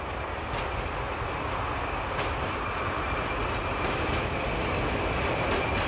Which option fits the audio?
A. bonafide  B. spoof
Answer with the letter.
A